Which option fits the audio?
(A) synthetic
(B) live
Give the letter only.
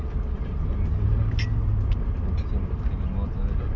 B